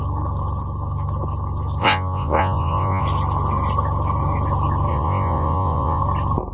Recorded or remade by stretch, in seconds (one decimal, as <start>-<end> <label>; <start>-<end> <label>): 0.0-1.8 recorded; 1.8-3.0 remade; 3.0-4.9 recorded; 4.9-6.0 remade; 6.0-6.5 recorded